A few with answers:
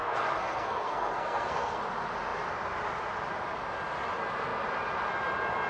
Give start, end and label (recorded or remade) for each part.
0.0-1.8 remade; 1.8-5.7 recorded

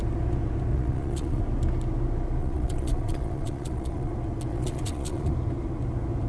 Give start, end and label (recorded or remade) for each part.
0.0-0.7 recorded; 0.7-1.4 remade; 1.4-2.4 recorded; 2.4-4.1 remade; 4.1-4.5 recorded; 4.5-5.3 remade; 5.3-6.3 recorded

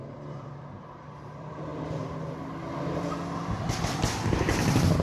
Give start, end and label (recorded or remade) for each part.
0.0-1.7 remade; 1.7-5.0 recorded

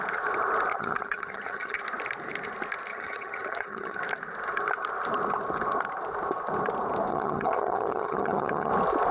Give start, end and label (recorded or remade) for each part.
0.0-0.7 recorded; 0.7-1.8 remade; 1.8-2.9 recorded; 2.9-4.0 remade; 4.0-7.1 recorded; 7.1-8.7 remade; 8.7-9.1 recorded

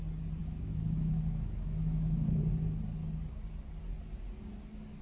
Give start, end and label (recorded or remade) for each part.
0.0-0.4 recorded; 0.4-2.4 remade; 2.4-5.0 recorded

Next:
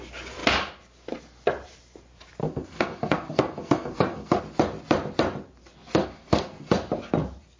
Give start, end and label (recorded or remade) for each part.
0.0-2.4 recorded; 2.4-4.4 remade; 4.4-6.0 recorded; 6.0-6.9 remade; 6.9-7.6 recorded